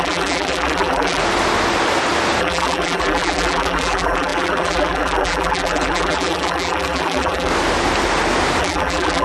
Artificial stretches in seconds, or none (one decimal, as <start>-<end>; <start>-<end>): 0.0-1.2; 2.4-7.5; 8.6-9.2